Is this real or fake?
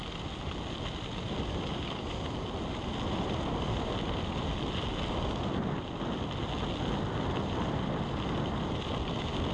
real